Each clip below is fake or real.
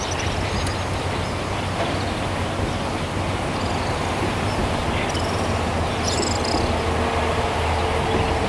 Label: real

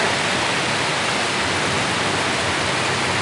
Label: real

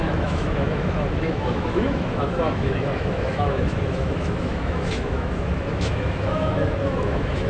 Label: fake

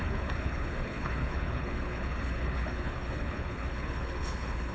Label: fake